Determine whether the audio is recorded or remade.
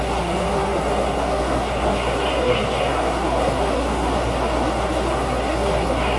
remade